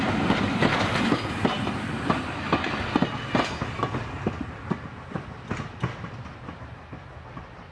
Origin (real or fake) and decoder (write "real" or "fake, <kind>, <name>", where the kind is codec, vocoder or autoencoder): real